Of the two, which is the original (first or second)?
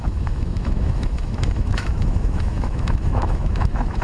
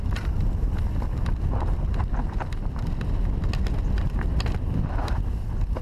second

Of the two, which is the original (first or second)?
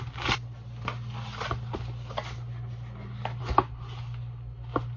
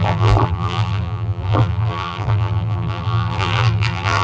first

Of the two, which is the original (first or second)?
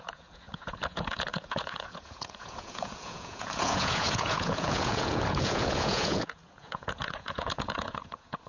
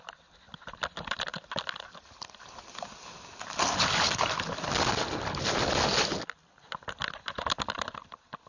second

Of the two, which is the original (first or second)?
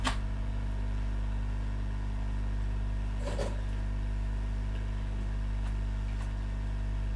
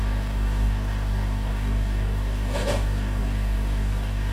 first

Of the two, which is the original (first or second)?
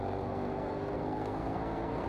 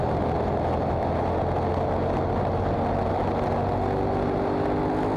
second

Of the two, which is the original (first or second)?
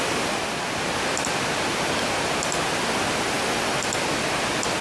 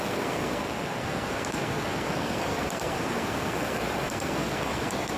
first